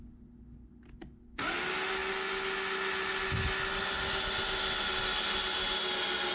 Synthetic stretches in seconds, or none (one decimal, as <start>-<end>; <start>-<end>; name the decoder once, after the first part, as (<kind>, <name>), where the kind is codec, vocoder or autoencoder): none